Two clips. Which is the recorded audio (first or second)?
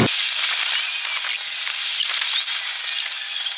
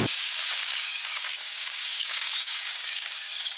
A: first